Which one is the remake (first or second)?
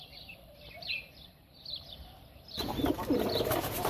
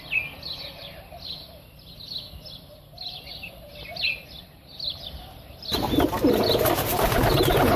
first